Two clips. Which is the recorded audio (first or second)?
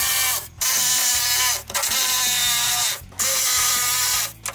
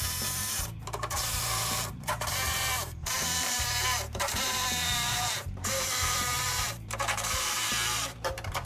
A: first